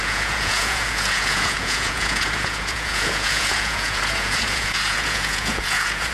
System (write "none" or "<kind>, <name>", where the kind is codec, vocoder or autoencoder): vocoder, Vocos